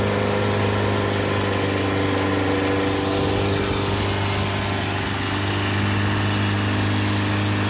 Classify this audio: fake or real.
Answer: real